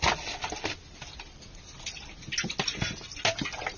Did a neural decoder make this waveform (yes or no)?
no